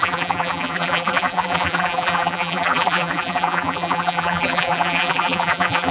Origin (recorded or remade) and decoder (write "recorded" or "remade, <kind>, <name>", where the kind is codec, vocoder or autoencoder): remade, vocoder, BigVGAN v2